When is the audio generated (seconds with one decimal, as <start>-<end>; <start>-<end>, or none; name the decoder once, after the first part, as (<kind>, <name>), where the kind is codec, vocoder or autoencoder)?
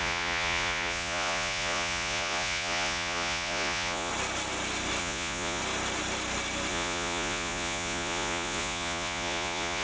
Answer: 0.0-4.1 (vocoder, Vocos); 5.0-5.6; 6.7-9.8